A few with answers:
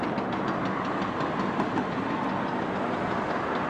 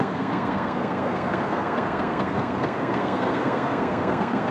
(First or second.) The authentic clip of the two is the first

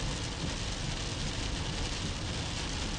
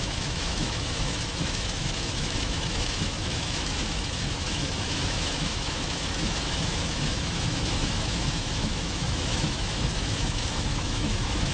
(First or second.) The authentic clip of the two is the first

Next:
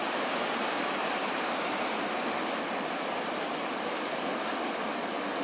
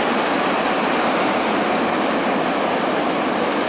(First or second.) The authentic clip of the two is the second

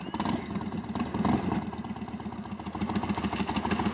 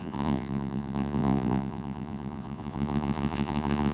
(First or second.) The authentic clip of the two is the first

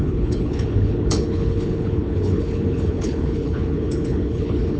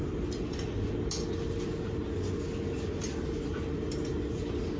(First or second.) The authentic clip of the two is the second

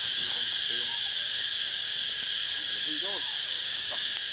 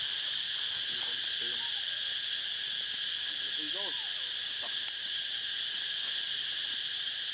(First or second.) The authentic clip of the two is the second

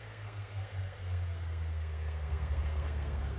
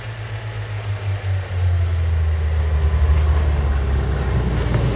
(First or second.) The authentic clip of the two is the second